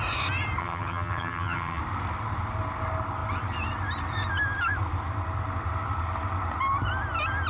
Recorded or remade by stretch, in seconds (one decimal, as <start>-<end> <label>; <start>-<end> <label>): 0.0-0.6 recorded; 0.6-1.8 remade; 1.8-7.5 recorded